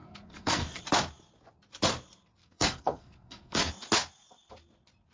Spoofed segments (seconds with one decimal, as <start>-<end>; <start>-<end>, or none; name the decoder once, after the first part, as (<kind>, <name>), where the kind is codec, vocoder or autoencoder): 0.0-0.8 (codec, SNAC); 2.4-3.7